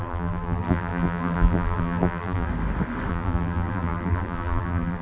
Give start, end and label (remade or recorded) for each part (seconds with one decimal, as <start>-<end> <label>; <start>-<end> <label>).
0.0-2.5 remade; 2.5-3.1 recorded; 3.1-5.0 remade